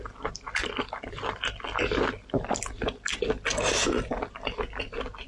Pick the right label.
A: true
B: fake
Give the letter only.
A